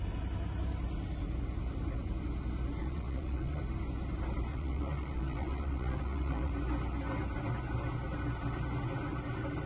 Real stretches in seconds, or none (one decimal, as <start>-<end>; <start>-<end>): 0.0-2.8; 3.6-4.5; 6.5-9.7